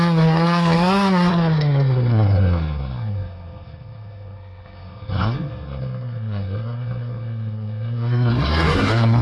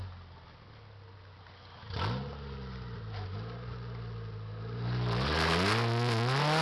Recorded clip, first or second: second